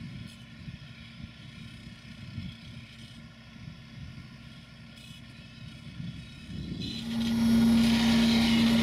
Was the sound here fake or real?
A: real